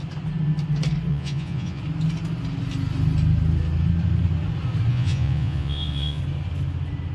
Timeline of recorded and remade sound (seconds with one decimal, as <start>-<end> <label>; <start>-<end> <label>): 0.0-1.1 recorded; 1.1-1.8 remade; 1.8-4.9 recorded; 4.9-6.2 remade; 6.2-7.1 recorded